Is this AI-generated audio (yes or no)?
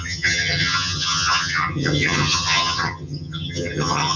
yes